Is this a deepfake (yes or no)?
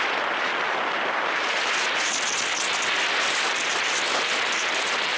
no